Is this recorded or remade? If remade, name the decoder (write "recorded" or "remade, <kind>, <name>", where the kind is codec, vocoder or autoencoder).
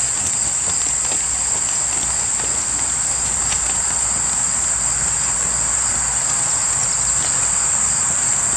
recorded